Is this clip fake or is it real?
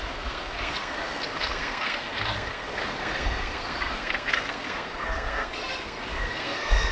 fake